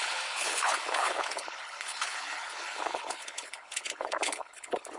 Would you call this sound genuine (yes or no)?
no